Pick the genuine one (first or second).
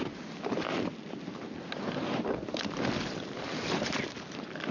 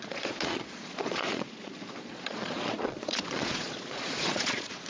first